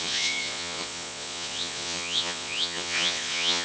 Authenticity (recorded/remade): remade